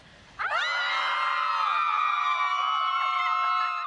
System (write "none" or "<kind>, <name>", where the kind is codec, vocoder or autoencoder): none